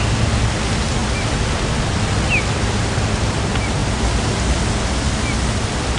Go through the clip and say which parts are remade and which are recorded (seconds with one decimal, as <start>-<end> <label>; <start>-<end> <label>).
0.0-6.0 recorded